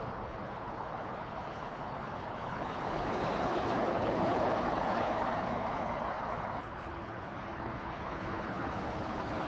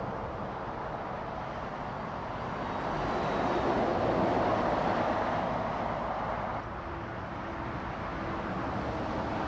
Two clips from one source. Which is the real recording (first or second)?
second